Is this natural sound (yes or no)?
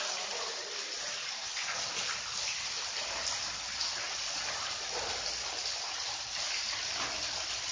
yes